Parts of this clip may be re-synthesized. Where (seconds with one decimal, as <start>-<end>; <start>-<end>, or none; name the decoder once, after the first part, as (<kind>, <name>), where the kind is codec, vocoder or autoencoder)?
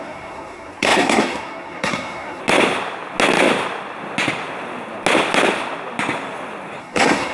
0.0-2.4 (codec, SNAC); 6.8-7.3